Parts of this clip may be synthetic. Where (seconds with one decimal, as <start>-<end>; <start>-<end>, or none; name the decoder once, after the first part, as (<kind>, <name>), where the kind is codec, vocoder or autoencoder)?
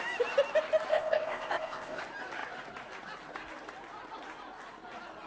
0.9-2.0 (codec, ZipCodec)